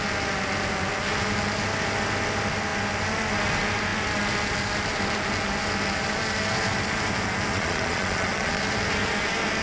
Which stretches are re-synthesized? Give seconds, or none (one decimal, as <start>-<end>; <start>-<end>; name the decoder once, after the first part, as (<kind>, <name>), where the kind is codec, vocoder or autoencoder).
7.5-8.6 (vocoder, Vocos)